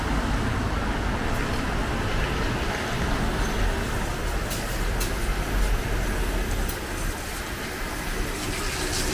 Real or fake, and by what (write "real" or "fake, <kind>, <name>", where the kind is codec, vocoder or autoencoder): real